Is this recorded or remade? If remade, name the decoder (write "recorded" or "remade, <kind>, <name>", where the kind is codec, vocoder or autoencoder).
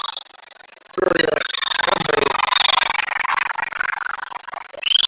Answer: recorded